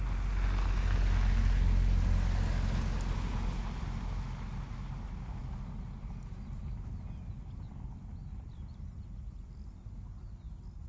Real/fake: real